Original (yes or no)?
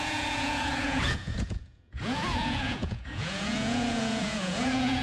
no